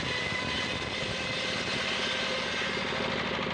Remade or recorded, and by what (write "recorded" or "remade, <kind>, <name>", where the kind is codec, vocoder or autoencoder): recorded